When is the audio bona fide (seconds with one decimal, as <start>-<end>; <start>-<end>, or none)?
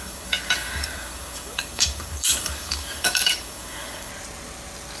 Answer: 4.1-5.0